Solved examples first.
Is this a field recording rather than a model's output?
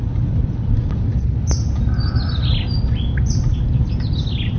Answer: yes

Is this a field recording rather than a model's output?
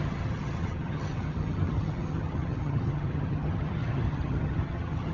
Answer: no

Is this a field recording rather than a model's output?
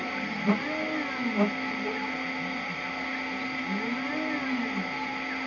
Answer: yes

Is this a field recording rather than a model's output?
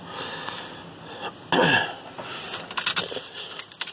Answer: yes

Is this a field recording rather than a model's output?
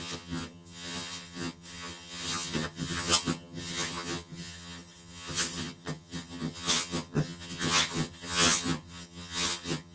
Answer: no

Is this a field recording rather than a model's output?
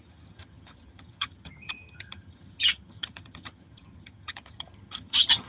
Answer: no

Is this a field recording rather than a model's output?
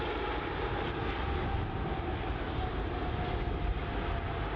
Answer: yes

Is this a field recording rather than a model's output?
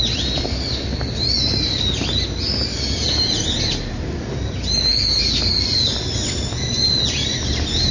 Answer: yes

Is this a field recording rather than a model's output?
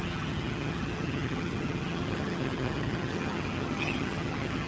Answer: no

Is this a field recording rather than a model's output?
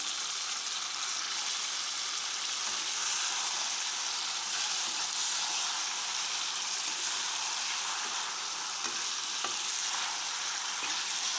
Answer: yes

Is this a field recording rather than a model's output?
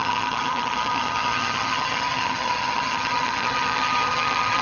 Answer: no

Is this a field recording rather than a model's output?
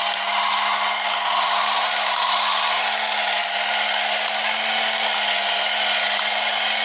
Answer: yes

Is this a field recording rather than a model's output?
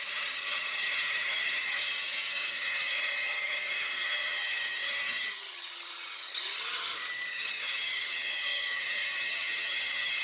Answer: no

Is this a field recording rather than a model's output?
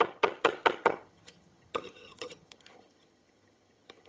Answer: no